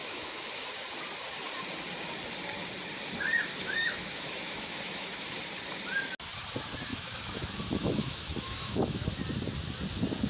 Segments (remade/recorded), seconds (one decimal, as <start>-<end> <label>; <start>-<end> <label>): 0.0-0.7 remade; 0.7-3.5 recorded; 3.5-5.4 remade; 5.4-6.9 recorded; 6.9-9.2 remade; 9.2-10.3 recorded